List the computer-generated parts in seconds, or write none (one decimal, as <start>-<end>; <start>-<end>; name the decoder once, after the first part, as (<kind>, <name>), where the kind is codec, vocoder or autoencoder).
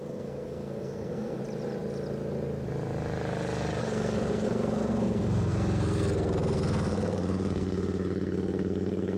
0.0-1.4 (codec, SNAC); 3.8-9.2